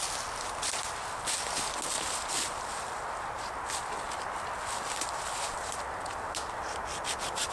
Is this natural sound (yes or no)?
yes